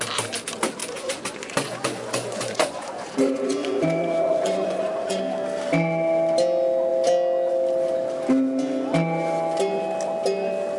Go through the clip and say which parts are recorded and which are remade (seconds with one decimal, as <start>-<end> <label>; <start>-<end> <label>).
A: 0.0-0.8 recorded; 0.8-5.2 remade; 5.2-10.8 recorded